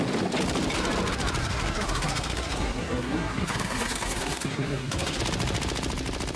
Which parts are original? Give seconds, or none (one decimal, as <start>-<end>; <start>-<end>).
0.0-1.4; 5.2-6.4

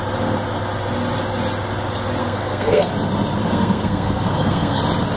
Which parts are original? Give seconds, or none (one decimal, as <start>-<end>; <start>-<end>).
0.0-2.2; 2.9-3.4; 4.8-5.2

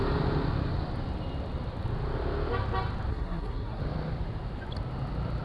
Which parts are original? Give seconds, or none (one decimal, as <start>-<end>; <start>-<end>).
0.0-3.1; 3.8-5.4

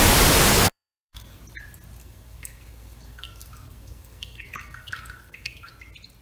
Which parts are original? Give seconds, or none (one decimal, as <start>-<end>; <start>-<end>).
0.0-0.5; 1.4-2.0; 5.7-6.2